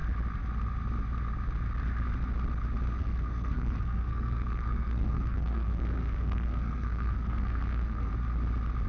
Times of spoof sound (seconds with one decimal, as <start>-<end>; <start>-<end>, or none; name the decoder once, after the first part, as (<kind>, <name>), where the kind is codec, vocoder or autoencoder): 3.0-8.1 (codec, SNAC)